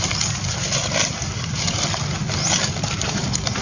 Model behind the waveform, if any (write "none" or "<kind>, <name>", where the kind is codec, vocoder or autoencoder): none